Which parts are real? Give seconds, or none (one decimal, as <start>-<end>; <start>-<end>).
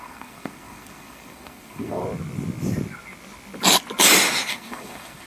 2.0-4.5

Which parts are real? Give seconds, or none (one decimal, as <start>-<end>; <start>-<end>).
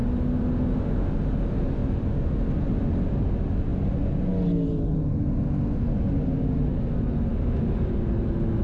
0.0-8.6